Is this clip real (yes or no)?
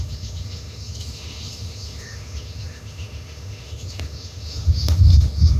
no